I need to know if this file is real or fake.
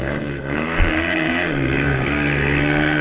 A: fake